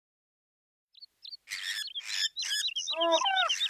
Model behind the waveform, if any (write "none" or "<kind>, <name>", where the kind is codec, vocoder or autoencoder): none